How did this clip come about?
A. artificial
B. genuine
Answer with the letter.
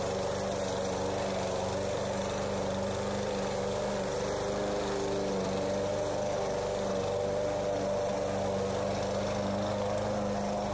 B